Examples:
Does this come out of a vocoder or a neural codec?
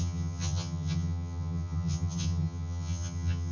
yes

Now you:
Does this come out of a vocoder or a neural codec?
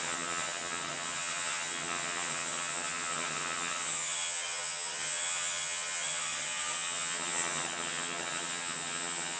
yes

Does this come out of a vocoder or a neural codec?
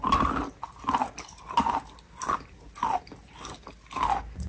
no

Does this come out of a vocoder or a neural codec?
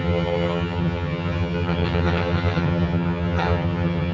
yes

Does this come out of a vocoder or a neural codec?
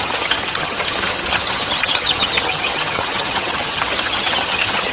yes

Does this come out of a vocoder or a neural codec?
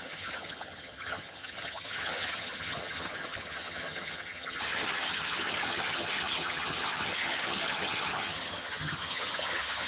yes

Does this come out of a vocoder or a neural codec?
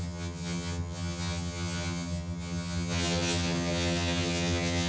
yes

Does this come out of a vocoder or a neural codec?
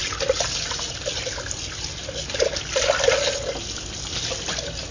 no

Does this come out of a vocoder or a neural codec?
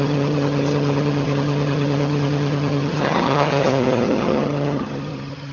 yes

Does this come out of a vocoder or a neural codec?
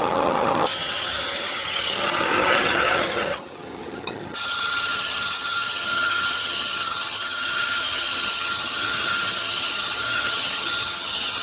yes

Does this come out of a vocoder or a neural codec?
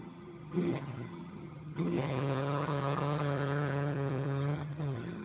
yes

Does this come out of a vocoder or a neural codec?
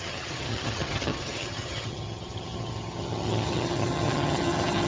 yes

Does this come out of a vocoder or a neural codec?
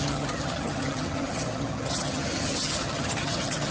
yes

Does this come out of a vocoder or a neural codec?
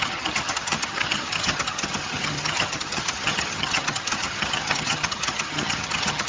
yes